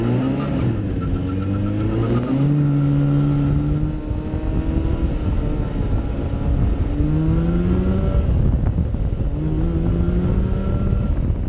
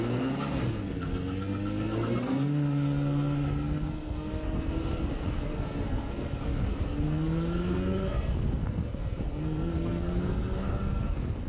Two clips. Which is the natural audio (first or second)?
first